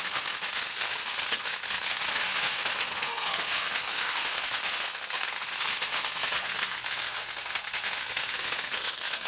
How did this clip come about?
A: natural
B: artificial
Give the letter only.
B